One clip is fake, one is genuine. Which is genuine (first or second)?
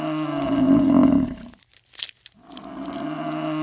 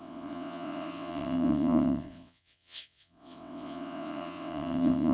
first